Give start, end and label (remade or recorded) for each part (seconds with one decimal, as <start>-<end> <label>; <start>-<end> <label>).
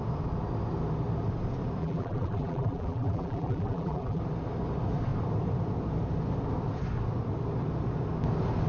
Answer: 0.0-1.8 recorded; 1.8-4.2 remade; 4.2-8.7 recorded